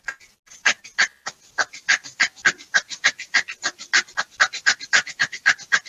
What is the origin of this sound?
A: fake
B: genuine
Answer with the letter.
B